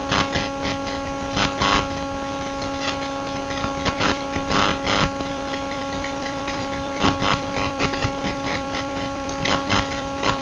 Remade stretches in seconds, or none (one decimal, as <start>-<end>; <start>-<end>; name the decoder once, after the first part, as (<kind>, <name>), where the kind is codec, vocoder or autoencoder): 3.9-4.7 (vocoder, BigVGAN v2); 5.3-10.4